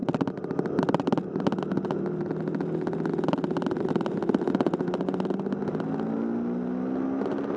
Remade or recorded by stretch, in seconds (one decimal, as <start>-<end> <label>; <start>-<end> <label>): 0.0-7.6 recorded